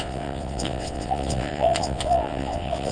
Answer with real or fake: fake